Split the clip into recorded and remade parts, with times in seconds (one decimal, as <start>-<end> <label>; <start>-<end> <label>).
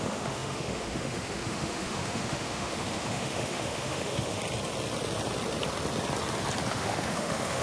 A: 0.0-4.4 remade; 4.4-6.7 recorded; 6.7-7.6 remade